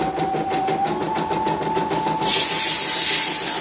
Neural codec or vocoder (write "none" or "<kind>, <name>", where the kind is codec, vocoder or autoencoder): none